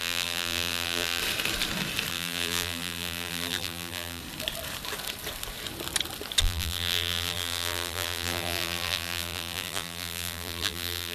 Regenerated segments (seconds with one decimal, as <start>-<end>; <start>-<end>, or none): 0.0-1.2; 2.1-4.2; 6.4-11.1